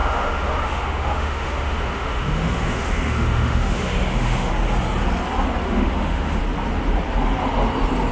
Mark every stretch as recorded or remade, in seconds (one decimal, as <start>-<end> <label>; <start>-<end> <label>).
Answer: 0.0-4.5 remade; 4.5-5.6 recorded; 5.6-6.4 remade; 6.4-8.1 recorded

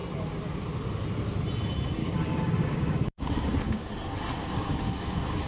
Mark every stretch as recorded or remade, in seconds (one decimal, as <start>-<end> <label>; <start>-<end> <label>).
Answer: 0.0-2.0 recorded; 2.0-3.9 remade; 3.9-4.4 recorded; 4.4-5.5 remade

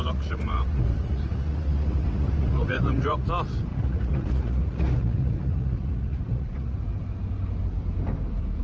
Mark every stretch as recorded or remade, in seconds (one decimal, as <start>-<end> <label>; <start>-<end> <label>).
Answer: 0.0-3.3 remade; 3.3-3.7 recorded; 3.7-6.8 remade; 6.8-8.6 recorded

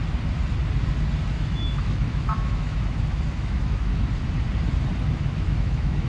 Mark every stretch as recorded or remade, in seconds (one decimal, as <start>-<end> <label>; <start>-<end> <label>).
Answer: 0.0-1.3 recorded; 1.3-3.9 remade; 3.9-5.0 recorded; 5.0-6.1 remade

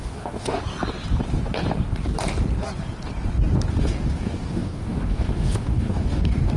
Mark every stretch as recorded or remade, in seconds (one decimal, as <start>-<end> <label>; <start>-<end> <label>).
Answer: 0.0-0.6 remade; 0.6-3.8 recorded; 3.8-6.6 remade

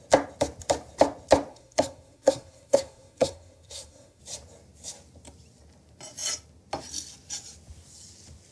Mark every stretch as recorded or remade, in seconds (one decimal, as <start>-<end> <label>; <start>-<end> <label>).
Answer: 0.0-1.5 recorded; 1.5-4.2 remade; 4.2-8.5 recorded